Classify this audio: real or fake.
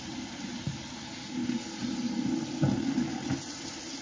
real